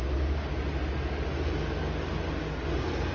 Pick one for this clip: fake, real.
real